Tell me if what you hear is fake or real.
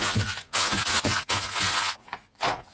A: fake